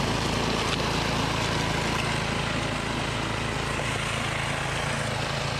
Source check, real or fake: real